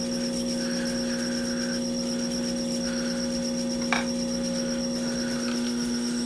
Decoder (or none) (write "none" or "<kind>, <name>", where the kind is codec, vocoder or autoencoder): none